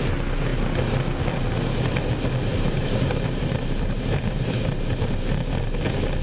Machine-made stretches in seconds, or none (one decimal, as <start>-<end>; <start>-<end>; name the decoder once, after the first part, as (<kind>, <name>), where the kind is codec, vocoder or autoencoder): 2.5-5.5 (vocoder, BigVGAN v2)